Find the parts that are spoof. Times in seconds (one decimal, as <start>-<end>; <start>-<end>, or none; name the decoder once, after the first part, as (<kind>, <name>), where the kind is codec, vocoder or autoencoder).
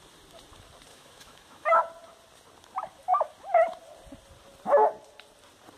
0.9-1.8 (autoencoder, DAC-VAE)